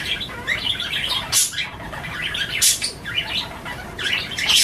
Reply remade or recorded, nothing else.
remade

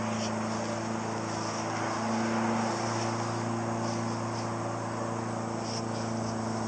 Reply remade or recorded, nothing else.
recorded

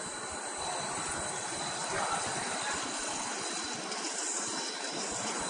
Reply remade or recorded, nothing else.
recorded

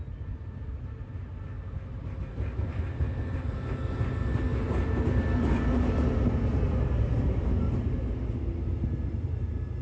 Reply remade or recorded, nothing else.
recorded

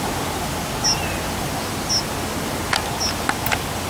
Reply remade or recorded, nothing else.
recorded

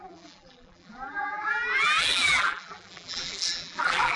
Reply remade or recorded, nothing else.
remade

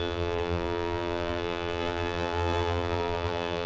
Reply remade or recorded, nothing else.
remade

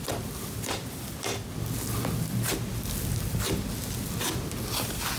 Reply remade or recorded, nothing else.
recorded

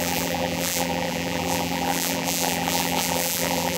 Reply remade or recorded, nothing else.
remade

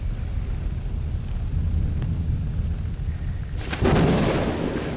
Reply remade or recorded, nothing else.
recorded